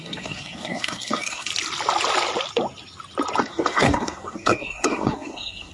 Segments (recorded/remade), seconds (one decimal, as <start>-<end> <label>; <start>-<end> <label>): 0.0-1.5 remade; 1.5-3.4 recorded; 3.4-5.7 remade